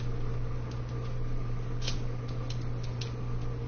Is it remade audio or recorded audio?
recorded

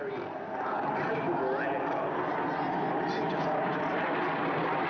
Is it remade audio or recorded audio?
recorded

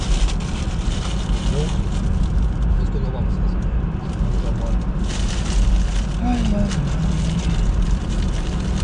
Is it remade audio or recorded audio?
recorded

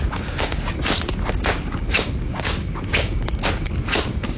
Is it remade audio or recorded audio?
remade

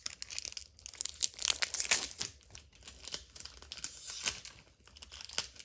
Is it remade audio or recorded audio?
recorded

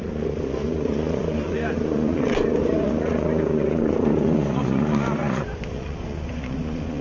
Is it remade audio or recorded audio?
remade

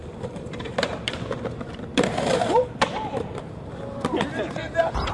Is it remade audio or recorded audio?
remade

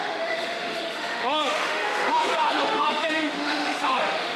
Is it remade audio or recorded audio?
remade